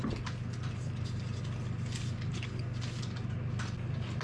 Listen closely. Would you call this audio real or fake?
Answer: real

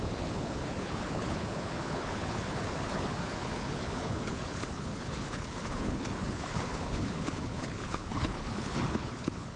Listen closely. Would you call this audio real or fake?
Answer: fake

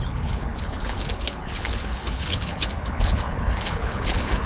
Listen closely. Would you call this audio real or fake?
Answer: fake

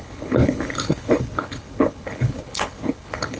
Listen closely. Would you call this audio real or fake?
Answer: fake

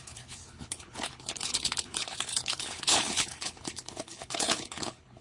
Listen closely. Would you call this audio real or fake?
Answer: fake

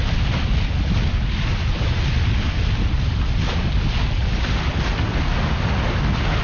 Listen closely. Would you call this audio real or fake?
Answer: real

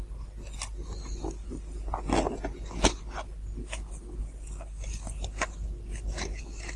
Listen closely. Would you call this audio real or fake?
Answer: real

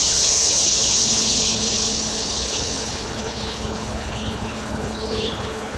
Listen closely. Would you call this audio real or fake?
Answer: fake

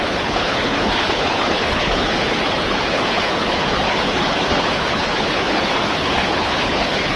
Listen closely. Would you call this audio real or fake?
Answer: fake